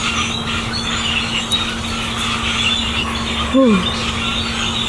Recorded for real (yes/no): yes